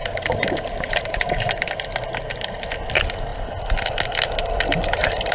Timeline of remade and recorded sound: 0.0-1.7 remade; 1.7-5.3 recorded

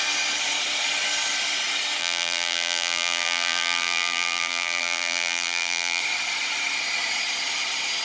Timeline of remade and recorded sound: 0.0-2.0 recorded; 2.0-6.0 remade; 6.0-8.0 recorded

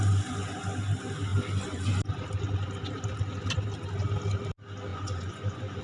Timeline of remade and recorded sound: 0.0-4.9 recorded; 4.9-5.8 remade

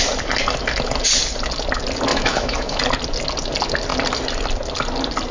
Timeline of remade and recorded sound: 0.0-2.1 recorded; 2.1-2.8 remade; 2.8-5.3 recorded

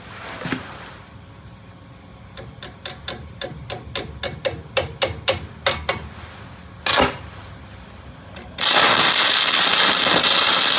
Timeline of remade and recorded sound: 0.0-10.8 recorded